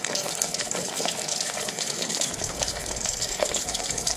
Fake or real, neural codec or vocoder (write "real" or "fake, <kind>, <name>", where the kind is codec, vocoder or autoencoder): fake, codec, SNAC